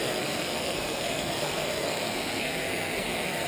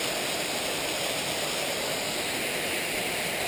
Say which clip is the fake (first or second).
first